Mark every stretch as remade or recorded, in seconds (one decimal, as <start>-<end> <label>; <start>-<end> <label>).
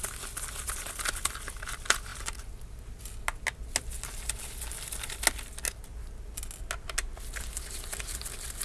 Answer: 0.0-8.6 recorded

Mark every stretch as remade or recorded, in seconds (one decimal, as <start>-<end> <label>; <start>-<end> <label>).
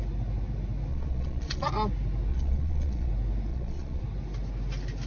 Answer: 0.0-0.9 recorded; 0.9-1.7 remade; 1.7-2.3 recorded; 2.3-3.1 remade; 3.1-3.5 recorded; 3.5-4.0 remade; 4.0-5.1 recorded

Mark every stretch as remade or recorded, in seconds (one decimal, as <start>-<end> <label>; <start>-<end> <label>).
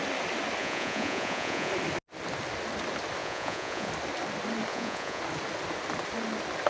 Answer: 0.0-0.6 recorded; 0.6-1.7 remade; 1.7-3.2 recorded; 3.2-3.9 remade; 3.9-4.7 recorded; 4.7-5.2 remade; 5.2-6.7 recorded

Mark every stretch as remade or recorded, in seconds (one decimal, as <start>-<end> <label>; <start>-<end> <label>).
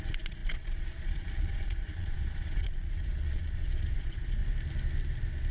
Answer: 0.0-4.4 remade; 4.4-5.5 recorded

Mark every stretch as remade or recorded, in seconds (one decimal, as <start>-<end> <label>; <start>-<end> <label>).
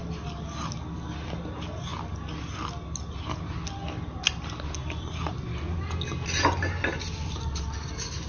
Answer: 0.0-8.3 recorded